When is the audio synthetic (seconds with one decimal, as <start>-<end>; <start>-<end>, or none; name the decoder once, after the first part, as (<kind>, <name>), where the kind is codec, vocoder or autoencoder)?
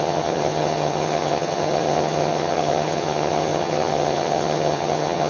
0.0-5.3 (vocoder, HiFi-GAN)